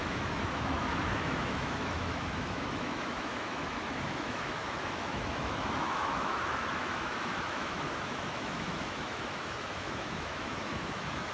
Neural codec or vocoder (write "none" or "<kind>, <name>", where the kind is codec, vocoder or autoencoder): autoencoder, DAC-VAE